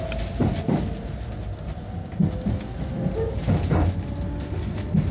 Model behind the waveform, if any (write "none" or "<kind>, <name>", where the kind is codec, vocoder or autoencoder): none